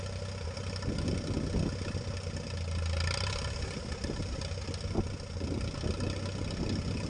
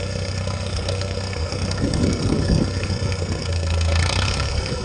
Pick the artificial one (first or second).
second